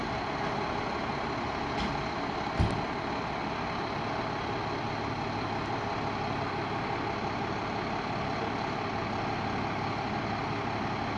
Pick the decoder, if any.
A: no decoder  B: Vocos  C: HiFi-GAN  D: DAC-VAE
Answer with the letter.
A